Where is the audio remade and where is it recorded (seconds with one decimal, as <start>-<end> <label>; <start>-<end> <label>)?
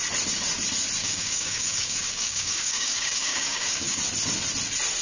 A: 0.0-1.0 recorded; 1.0-4.0 remade; 4.0-5.0 recorded